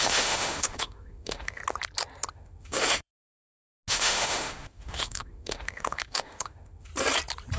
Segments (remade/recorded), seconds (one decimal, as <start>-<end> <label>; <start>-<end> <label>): 0.0-1.6 remade; 1.6-2.3 recorded; 2.3-3.1 remade; 3.1-3.9 recorded; 3.9-6.9 remade; 6.9-7.6 recorded